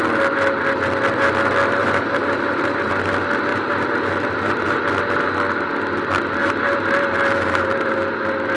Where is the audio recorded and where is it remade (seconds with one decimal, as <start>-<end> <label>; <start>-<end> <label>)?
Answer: 0.0-1.8 recorded; 1.8-2.9 remade; 2.9-3.5 recorded; 3.5-4.8 remade; 4.8-6.4 recorded; 6.4-8.0 remade; 8.0-8.6 recorded